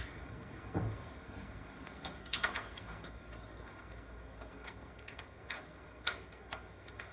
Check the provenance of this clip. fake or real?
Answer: fake